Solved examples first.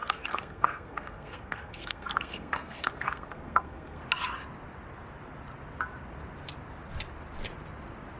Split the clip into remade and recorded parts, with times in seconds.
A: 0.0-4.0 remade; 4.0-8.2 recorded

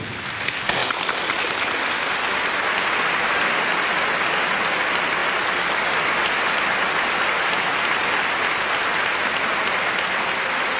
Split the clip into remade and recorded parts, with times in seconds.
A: 0.0-10.8 recorded

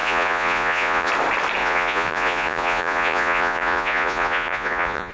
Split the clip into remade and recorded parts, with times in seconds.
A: 0.0-1.1 remade; 1.1-1.6 recorded; 1.6-5.1 remade

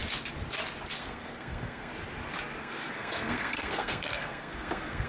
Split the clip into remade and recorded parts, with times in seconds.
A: 0.0-1.0 recorded; 1.0-1.9 remade; 1.9-2.6 recorded; 2.6-5.1 remade

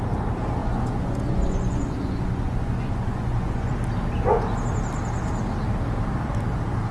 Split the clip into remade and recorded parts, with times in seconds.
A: 0.0-0.6 recorded; 0.6-3.7 remade; 3.7-6.9 recorded

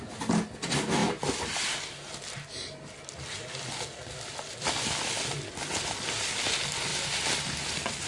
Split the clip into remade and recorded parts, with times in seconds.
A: 0.0-8.1 recorded

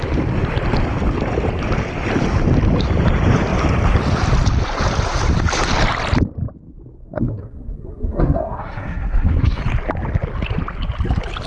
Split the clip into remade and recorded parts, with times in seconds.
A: 0.0-7.0 recorded; 7.0-9.6 remade; 9.6-11.5 recorded

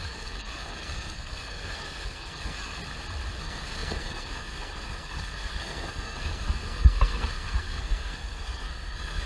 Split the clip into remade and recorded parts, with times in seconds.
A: 0.0-2.8 remade; 2.8-3.4 recorded; 3.4-9.3 remade